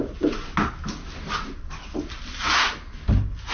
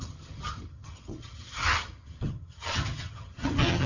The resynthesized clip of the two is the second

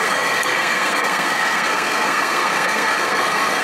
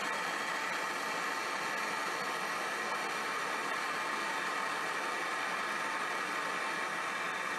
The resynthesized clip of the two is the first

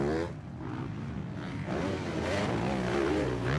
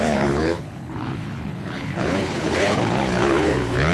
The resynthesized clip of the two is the second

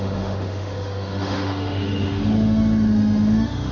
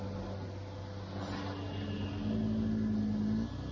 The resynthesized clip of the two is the first